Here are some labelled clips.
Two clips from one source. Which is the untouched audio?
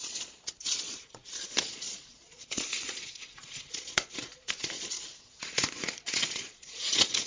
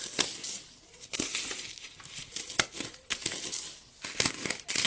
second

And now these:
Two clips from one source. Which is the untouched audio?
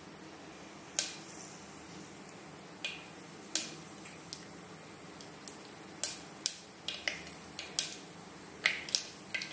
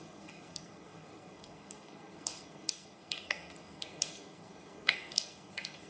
first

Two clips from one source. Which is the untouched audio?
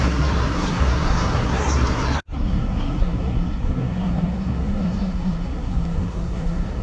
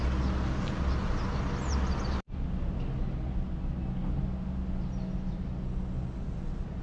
second